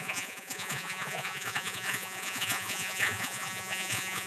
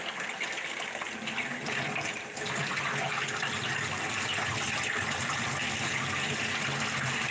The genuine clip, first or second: second